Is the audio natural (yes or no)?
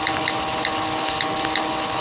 yes